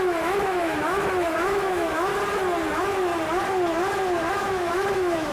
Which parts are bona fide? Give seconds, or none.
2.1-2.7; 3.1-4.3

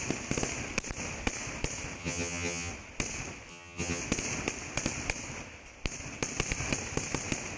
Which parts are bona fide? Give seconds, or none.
0.0-2.0; 2.7-3.5; 4.0-7.6

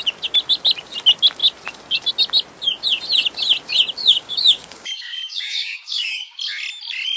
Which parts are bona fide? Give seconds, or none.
0.0-4.0; 6.4-7.2

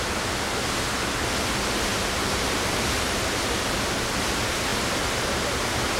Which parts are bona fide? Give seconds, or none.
0.0-1.9; 3.4-6.0

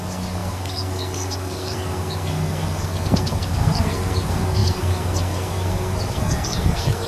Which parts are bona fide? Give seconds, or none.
none

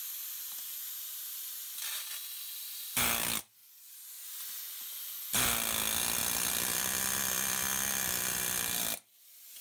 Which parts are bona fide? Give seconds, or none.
0.0-1.1; 2.1-6.2

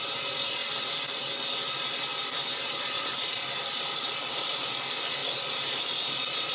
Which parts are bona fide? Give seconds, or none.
0.0-0.6; 1.3-2.1; 4.7-5.2; 5.8-6.5

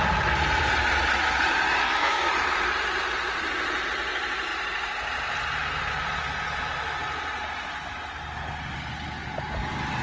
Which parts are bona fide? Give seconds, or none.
0.0-1.8; 2.3-10.0